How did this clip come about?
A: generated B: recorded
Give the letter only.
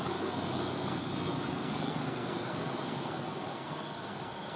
A